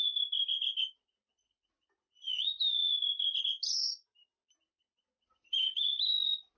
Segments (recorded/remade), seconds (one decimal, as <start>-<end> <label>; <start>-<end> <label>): 0.0-6.6 recorded